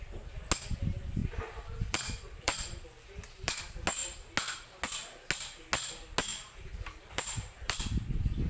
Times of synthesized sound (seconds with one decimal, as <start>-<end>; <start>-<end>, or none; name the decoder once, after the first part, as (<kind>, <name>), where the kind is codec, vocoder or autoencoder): 1.2-3.6 (vocoder, BigVGAN v2); 6.3-8.0

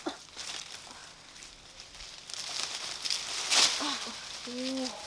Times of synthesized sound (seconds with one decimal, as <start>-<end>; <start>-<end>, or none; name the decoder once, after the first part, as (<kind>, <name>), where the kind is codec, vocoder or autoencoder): none

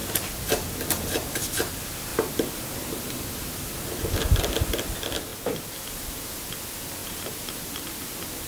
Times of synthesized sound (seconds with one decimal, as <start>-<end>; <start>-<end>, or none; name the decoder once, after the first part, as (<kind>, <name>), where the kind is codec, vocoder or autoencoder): 2.1-4.5 (vocoder, BigVGAN v2); 7.0-8.5

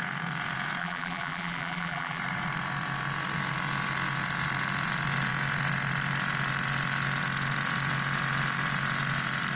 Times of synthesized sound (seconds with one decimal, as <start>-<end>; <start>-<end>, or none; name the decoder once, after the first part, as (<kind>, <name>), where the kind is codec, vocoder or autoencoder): 0.8-2.2 (vocoder, BigVGAN v2)

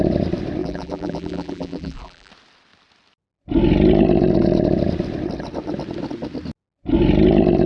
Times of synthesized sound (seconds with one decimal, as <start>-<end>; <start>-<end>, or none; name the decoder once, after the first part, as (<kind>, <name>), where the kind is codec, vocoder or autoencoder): 0.6-2.3 (vocoder, BigVGAN v2)

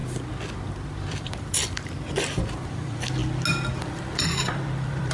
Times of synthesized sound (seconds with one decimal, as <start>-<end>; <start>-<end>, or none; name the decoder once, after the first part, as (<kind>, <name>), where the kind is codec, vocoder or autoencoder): 1.0-1.6 (vocoder, BigVGAN v2); 2.4-3.2; 3.8-5.1